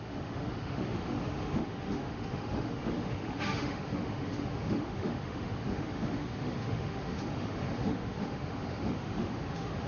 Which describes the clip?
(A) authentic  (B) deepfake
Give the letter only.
B